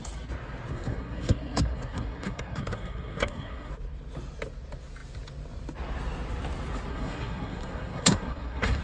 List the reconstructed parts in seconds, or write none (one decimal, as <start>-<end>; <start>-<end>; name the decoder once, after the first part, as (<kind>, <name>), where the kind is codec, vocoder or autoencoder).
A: 0.7-3.7 (codec, SNAC); 6.9-8.8